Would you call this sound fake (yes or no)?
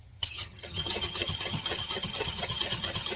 yes